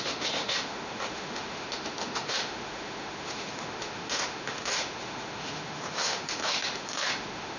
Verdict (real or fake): fake